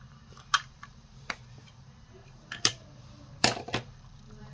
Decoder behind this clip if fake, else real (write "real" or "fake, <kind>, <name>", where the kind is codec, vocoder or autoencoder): fake, vocoder, BigVGAN v2